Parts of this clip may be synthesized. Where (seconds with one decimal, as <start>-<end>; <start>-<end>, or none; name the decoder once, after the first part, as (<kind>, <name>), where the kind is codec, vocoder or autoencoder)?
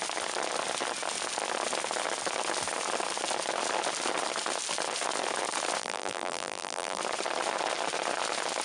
5.8-7.0 (vocoder, BigVGAN v2)